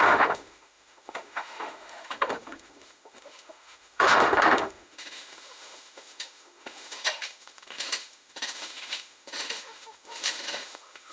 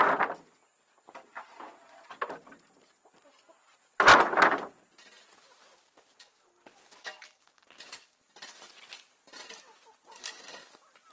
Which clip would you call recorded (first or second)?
second